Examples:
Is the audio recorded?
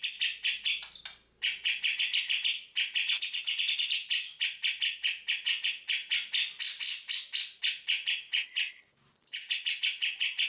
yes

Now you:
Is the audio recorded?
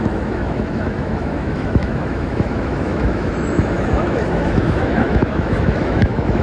no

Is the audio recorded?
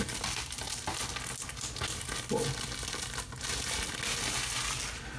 yes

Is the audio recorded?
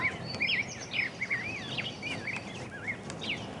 yes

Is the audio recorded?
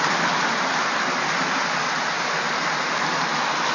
yes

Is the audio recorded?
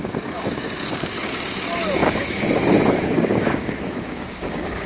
no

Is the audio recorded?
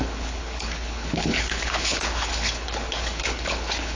no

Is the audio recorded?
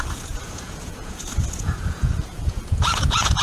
no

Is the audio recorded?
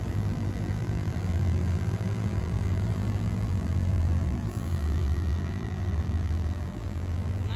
no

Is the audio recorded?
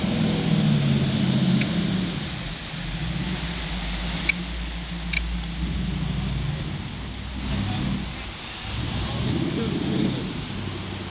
yes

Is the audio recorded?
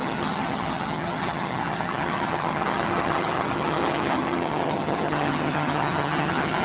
no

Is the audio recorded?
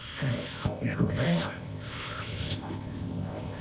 no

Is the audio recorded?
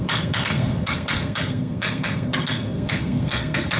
no